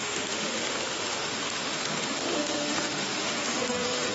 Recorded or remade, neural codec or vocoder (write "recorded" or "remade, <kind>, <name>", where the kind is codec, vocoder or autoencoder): remade, autoencoder, DAC-VAE